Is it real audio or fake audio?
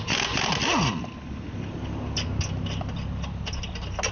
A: real